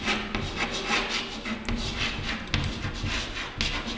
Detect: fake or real real